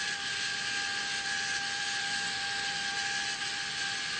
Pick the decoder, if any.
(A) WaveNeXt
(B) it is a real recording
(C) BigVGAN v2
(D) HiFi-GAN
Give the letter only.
C